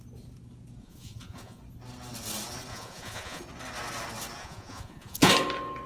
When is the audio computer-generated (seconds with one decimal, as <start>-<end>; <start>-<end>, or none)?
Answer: 0.8-1.6; 2.7-3.4; 4.4-5.3